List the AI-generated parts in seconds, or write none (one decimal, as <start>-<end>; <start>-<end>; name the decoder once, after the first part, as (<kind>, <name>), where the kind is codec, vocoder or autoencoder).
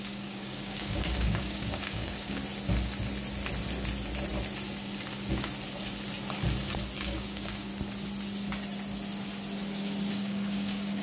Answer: 0.0-2.4 (codec, DAC); 7.0-7.7; 10.1-11.0